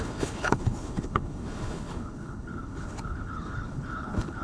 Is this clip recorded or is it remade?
remade